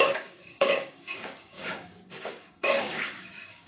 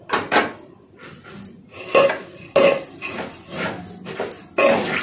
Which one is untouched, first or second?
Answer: second